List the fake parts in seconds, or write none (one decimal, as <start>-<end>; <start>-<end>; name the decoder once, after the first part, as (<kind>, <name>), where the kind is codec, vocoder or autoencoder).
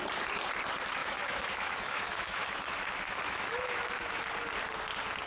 1.0-4.2 (autoencoder, DAC-VAE)